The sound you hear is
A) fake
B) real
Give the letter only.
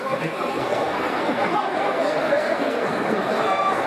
A